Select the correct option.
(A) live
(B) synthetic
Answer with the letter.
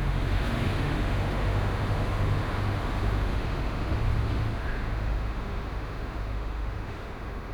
B